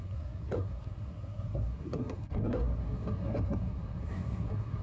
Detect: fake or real fake